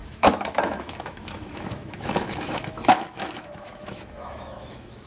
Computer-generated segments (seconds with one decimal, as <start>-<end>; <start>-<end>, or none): 0.0-5.1